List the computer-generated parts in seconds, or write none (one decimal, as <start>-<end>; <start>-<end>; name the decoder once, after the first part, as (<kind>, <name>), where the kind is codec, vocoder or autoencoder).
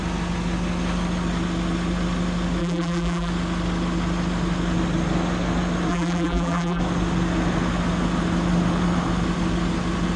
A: 2.6-3.3 (vocoder, BigVGAN v2); 5.9-6.8